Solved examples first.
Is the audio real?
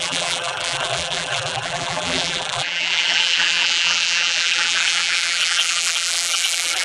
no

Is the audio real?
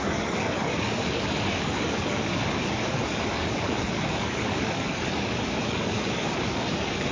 no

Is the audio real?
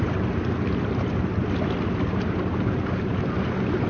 yes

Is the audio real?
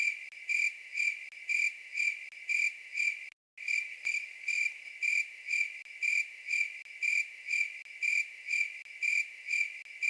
yes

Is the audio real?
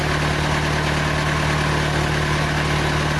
yes